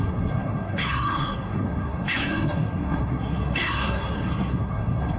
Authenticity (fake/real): fake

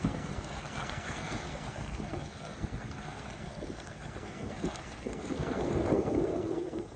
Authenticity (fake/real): fake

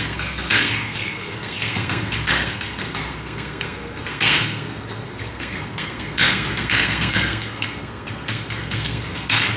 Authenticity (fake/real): fake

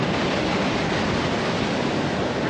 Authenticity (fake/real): real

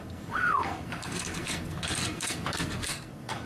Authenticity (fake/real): fake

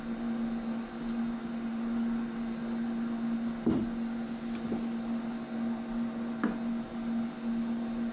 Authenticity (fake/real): real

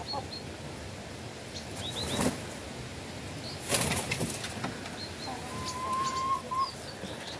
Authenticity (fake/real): real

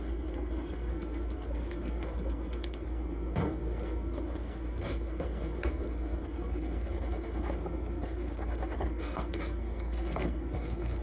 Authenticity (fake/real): fake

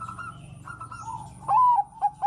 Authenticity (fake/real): real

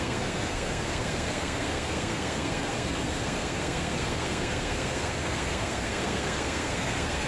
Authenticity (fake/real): fake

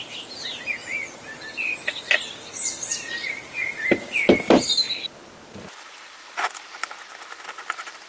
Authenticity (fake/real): real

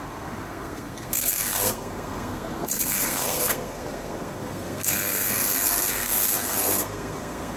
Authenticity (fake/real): fake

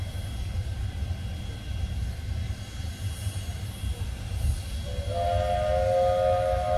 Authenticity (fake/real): real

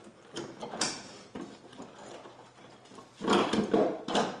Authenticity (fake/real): real